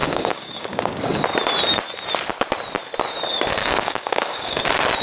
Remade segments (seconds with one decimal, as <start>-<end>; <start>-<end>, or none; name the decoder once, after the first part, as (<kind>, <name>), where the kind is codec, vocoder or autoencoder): 0.0-1.2 (codec, DAC); 3.6-4.6